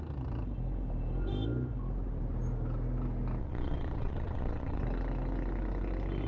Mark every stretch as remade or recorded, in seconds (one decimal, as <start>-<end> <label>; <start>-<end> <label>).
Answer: 0.0-3.4 recorded; 3.4-4.8 remade; 4.8-6.3 recorded

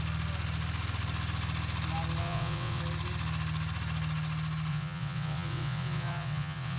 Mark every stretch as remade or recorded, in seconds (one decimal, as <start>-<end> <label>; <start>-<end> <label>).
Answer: 0.0-2.2 recorded; 2.2-2.8 remade; 2.8-4.7 recorded; 4.7-6.8 remade

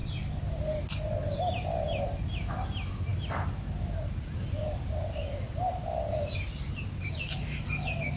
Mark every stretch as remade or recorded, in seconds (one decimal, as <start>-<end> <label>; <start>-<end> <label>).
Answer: 0.0-8.2 recorded

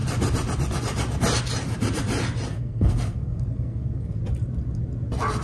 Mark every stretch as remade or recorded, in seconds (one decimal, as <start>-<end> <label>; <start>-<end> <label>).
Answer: 0.0-2.5 recorded; 2.5-4.2 remade; 4.2-5.4 recorded